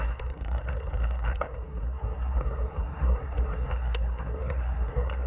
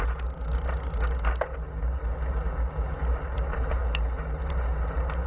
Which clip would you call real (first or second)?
second